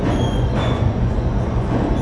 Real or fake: fake